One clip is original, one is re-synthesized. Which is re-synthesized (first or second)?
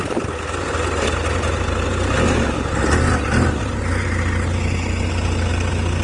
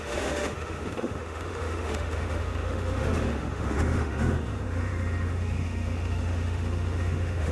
second